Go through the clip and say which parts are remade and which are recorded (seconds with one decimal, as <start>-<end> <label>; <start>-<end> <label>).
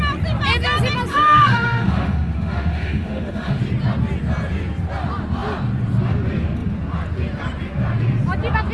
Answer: 0.0-1.1 recorded; 1.1-3.6 remade; 3.6-8.7 recorded